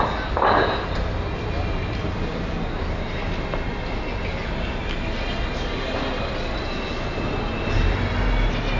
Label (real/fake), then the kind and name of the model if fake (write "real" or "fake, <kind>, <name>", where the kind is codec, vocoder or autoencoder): real